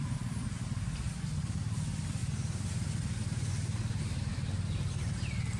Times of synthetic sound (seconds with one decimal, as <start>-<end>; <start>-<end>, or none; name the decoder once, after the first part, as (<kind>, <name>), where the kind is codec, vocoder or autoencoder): 4.3-5.6 (vocoder, BigVGAN v2)